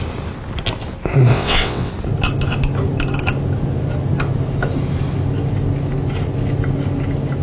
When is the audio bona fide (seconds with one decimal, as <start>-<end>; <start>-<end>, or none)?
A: 0.0-1.3; 1.9-7.4